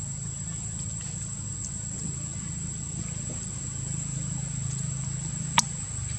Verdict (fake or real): real